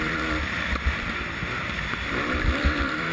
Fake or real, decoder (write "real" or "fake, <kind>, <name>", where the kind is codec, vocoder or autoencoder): fake, vocoder, BigVGAN v2